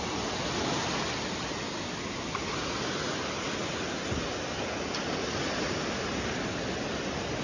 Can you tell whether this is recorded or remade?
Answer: recorded